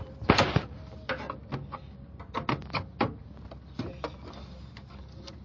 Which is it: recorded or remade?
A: recorded